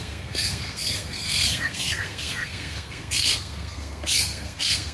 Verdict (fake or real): fake